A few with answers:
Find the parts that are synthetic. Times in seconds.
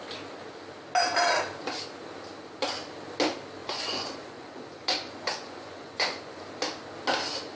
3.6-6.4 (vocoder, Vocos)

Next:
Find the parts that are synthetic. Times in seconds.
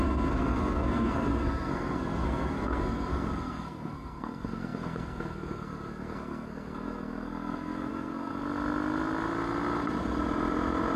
0.0-8.3 (codec, SNAC)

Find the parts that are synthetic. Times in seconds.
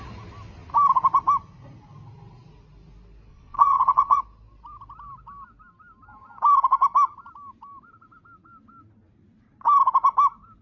3.3-4.2 (vocoder, WaveNeXt)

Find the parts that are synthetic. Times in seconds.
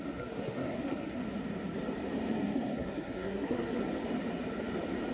0.0-1.2 (codec, SNAC); 2.3-3.8